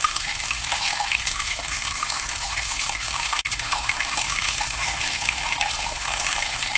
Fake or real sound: fake